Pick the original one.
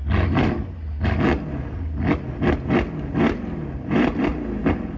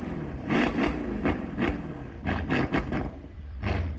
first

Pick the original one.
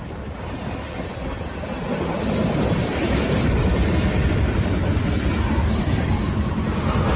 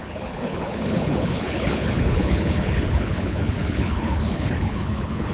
first